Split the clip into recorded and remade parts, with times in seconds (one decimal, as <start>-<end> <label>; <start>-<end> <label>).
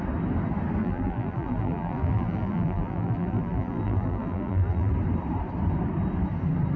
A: 0.0-0.8 recorded; 0.8-4.9 remade; 4.9-6.8 recorded